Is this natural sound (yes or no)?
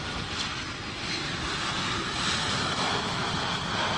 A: yes